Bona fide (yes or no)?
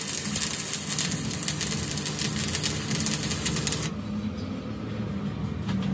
yes